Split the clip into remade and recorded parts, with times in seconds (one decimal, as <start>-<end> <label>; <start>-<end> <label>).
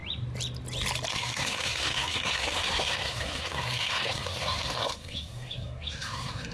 0.0-1.1 recorded; 1.1-6.5 remade